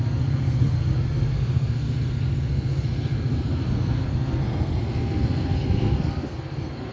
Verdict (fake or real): fake